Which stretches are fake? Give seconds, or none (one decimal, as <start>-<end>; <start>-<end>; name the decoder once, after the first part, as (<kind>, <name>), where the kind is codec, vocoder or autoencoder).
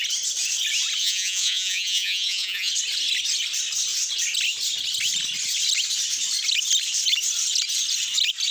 1.0-2.7 (vocoder, Vocos)